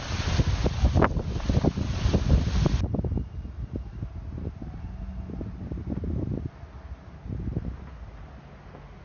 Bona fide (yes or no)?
yes